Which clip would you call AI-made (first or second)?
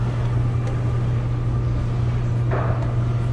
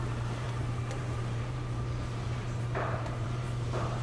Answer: second